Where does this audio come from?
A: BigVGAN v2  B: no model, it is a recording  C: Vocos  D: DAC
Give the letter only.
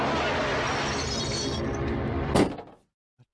B